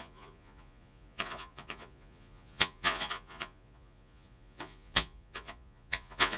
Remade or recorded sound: remade